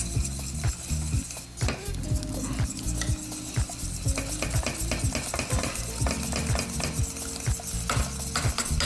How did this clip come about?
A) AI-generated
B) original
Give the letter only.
B